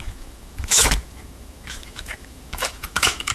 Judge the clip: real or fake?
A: fake